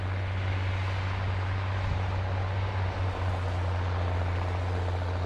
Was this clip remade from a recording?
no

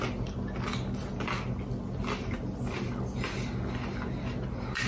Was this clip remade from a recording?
no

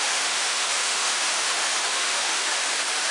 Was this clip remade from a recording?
yes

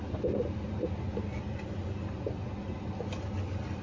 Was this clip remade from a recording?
no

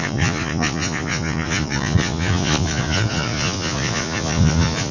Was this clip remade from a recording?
yes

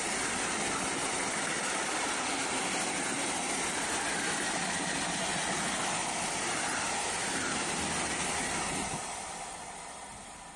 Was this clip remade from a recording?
no